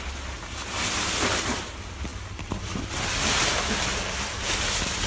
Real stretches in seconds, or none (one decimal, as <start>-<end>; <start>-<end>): 0.0-5.1